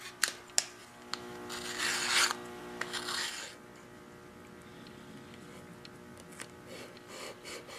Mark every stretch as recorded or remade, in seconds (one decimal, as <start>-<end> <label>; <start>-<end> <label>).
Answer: 0.0-7.8 recorded